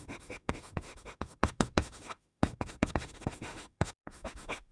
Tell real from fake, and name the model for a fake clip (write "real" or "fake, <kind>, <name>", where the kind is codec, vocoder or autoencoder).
fake, autoencoder, DAC-VAE